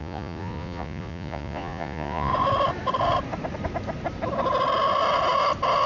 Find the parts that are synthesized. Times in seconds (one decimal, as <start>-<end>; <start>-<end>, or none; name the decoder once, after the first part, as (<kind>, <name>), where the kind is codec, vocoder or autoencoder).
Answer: 0.0-2.3 (vocoder, Vocos)